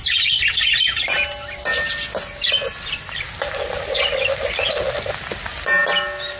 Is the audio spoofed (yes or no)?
no